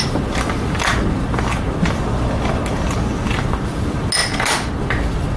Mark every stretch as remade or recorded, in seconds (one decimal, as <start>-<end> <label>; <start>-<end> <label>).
0.0-5.4 recorded

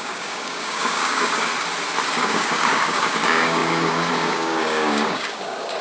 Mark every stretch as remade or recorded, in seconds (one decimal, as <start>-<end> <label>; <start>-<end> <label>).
0.0-1.5 remade; 1.5-2.1 recorded; 2.1-5.8 remade

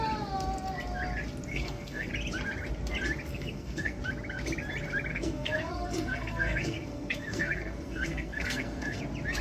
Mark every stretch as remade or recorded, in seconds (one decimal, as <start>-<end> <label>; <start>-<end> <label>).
0.0-1.5 recorded; 1.5-2.1 remade; 2.1-3.3 recorded; 3.3-4.0 remade; 4.0-5.1 recorded; 5.1-9.0 remade; 9.0-9.4 recorded

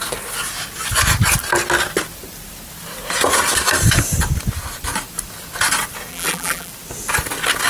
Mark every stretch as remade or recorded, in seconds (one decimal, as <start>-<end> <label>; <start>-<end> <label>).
0.0-6.1 recorded; 6.1-6.7 remade; 6.7-7.7 recorded

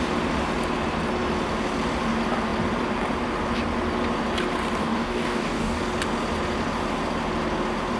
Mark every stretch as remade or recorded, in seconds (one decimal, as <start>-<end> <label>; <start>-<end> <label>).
0.0-4.8 recorded; 4.8-5.8 remade; 5.8-8.0 recorded

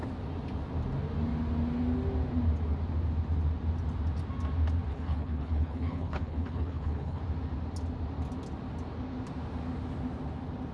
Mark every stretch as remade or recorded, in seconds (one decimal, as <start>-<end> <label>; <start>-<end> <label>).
0.0-4.9 recorded; 4.9-7.2 remade; 7.2-10.7 recorded